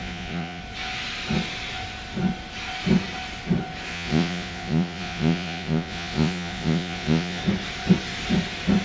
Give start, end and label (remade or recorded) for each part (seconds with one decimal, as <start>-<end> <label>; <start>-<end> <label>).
0.0-0.6 remade; 0.6-3.9 recorded; 3.9-7.4 remade; 7.4-8.8 recorded